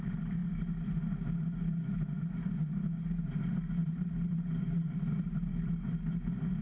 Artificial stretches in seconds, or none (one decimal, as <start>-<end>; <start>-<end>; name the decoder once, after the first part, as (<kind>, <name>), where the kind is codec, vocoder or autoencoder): 3.8-4.5 (vocoder, BigVGAN v2)